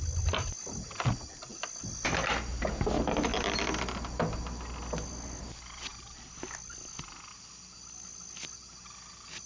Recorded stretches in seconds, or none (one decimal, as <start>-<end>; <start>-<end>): 0.0-9.5